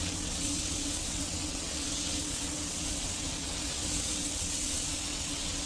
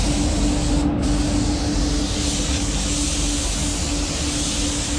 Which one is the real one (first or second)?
second